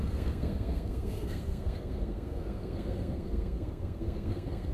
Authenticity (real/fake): fake